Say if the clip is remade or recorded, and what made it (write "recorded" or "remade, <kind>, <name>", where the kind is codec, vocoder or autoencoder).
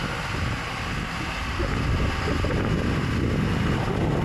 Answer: recorded